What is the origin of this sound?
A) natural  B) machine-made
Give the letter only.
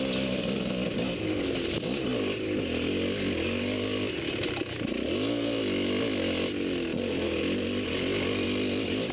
A